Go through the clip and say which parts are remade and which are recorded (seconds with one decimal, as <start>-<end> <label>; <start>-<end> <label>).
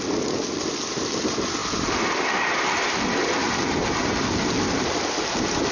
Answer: 0.0-5.7 recorded